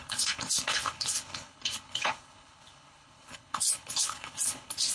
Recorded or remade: remade